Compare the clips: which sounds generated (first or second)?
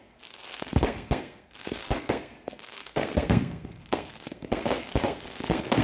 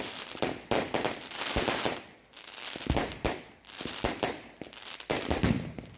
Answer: first